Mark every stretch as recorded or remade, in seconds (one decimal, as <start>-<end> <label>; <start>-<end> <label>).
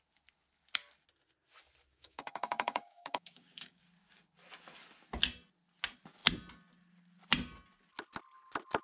0.0-1.9 recorded; 1.9-3.8 remade; 3.8-8.8 recorded